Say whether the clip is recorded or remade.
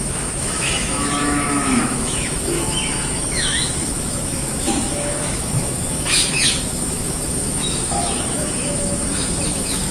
remade